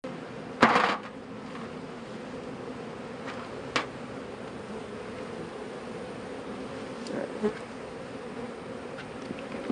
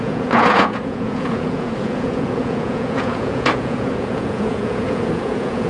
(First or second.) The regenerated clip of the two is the second